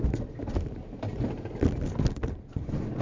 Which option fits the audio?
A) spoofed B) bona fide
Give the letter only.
B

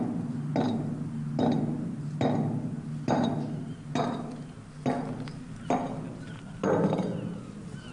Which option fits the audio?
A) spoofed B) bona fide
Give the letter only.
B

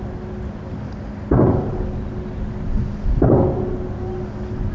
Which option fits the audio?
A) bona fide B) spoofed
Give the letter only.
A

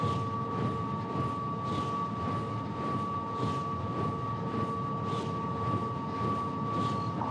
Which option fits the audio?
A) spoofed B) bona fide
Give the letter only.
B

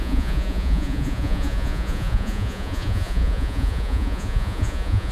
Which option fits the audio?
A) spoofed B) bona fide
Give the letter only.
A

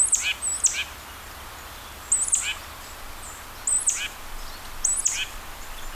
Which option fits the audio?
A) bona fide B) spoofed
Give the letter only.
A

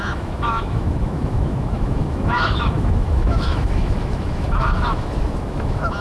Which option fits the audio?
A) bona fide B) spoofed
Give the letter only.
B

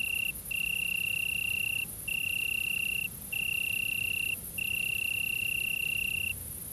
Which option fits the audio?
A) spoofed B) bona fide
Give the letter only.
B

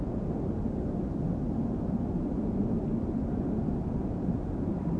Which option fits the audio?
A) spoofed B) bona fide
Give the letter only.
B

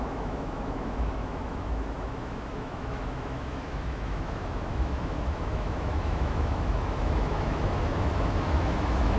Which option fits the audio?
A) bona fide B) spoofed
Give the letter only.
B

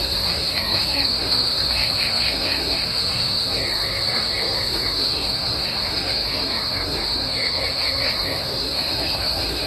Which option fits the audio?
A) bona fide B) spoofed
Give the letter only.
B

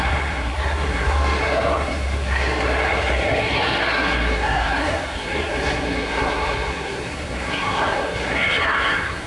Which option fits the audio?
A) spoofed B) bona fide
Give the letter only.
A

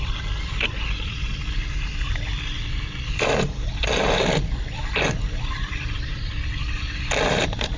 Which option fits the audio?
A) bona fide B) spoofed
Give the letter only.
A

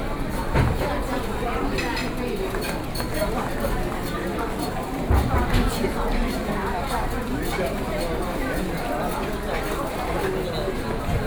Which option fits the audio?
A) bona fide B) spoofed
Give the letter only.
A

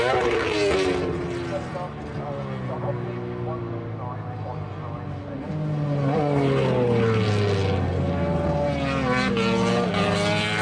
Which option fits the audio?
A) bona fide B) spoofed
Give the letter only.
A